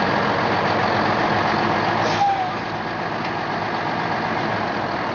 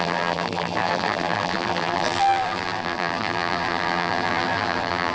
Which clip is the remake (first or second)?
second